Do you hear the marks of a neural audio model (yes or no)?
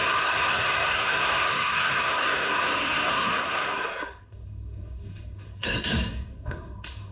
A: yes